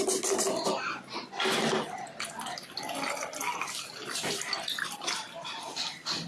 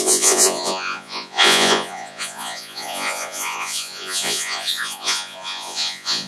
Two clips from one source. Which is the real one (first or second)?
first